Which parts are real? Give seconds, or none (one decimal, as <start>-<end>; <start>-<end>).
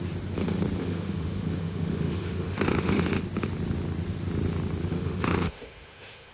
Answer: 0.0-0.8; 3.2-4.9